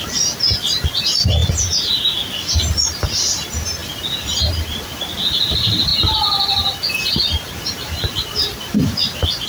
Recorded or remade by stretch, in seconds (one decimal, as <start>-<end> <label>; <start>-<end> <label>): 0.0-1.4 remade; 1.4-2.6 recorded; 2.6-5.9 remade; 5.9-7.1 recorded; 7.1-9.5 remade